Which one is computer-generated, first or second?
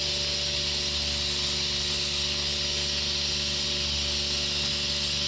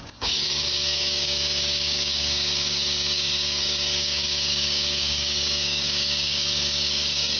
second